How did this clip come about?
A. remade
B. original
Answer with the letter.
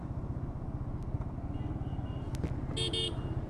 B